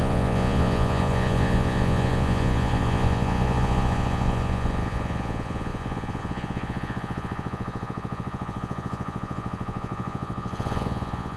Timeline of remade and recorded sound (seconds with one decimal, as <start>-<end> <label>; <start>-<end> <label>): 0.0-11.4 remade